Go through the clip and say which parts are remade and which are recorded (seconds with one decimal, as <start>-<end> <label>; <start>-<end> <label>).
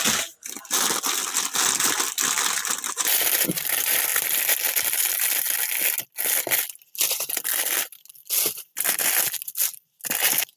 0.0-10.6 recorded